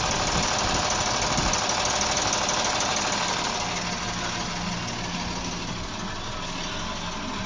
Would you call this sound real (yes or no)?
yes